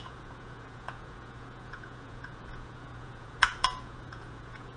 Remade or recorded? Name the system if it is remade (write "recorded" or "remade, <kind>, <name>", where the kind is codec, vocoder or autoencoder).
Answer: remade, vocoder, Vocos